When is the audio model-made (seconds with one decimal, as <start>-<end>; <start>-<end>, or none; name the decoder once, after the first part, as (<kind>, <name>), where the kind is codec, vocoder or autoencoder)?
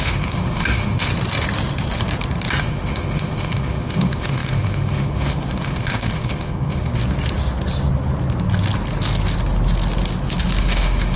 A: 0.0-1.1 (autoencoder, DAC-VAE); 2.6-6.9; 10.6-11.2